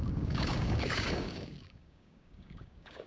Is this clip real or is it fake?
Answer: fake